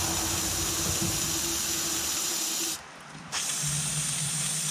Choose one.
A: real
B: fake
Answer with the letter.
A